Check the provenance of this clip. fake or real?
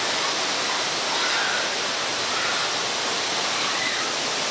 real